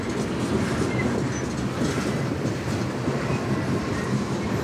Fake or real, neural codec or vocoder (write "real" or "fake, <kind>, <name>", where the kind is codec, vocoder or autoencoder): real